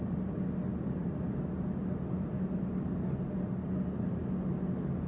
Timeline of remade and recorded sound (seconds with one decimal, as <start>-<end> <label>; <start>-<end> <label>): 0.0-5.1 recorded